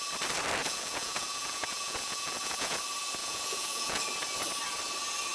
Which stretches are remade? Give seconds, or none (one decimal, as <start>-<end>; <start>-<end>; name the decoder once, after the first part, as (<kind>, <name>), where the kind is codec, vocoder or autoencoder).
0.6-2.8 (vocoder, Vocos); 3.2-4.0